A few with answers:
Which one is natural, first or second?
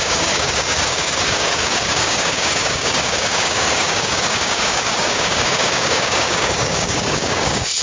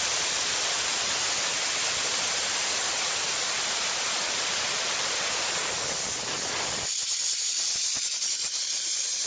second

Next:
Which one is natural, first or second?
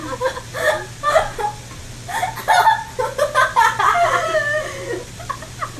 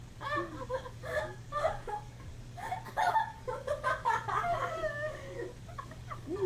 first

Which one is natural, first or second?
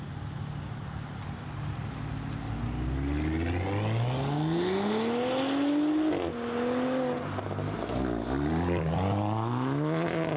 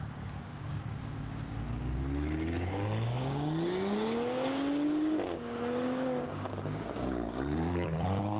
first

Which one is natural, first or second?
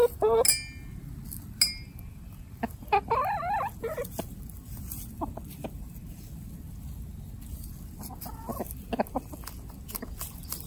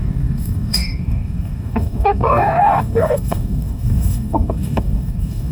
first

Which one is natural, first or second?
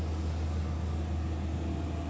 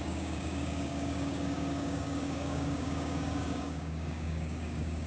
first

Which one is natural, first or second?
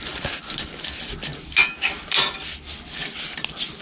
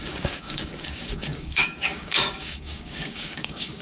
first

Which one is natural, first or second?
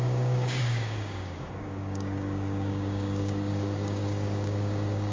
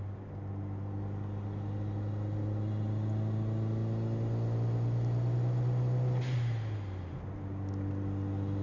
second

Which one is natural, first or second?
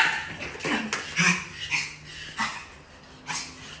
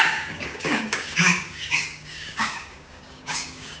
first